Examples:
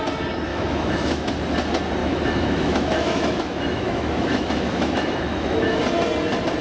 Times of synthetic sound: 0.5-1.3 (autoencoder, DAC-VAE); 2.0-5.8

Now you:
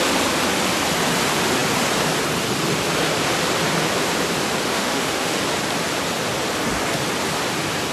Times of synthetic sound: 4.7-5.4 (autoencoder, DAC-VAE)

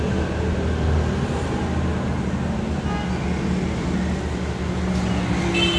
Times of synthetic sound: none